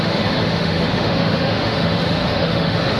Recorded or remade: remade